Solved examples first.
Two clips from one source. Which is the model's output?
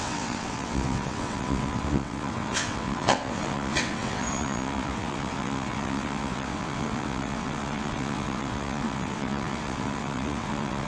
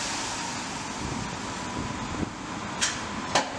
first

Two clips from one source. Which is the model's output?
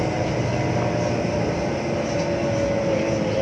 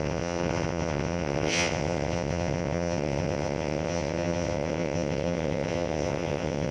second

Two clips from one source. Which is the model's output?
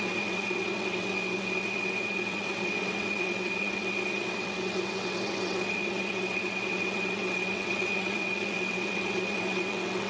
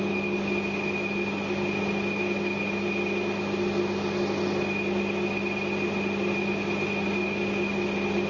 first